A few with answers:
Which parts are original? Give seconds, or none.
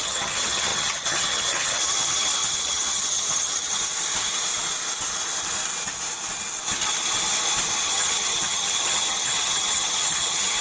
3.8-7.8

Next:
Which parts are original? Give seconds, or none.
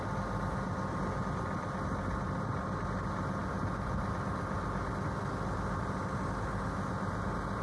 0.0-7.6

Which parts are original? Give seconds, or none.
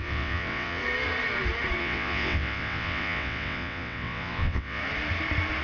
0.8-1.8; 4.8-5.6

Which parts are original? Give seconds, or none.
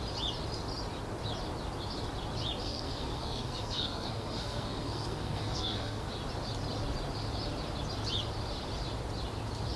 0.0-2.6; 6.1-9.8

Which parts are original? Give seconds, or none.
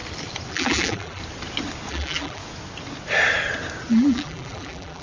0.0-0.5; 1.2-1.9; 2.4-3.9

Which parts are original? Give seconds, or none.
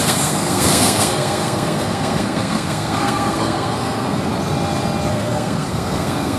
4.3-5.1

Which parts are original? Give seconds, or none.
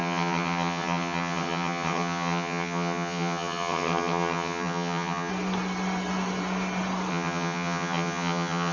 5.3-7.1